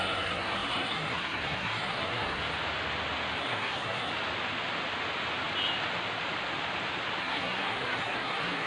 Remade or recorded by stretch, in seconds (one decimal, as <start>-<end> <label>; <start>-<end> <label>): 0.0-2.4 remade; 2.4-3.4 recorded; 3.4-4.1 remade; 4.1-7.2 recorded; 7.2-8.7 remade